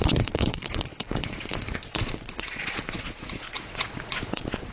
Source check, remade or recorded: remade